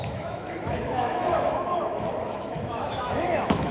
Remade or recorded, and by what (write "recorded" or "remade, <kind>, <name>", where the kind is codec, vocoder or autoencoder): remade, autoencoder, DAC-VAE